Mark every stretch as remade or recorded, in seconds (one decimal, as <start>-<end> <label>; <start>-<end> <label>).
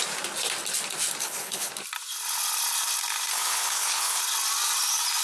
0.0-1.2 recorded; 1.2-1.7 remade; 1.7-3.3 recorded; 3.3-4.2 remade; 4.2-5.2 recorded